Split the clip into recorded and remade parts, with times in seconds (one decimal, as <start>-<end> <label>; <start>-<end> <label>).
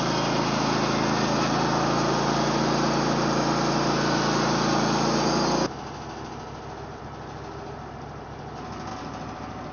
0.0-9.7 recorded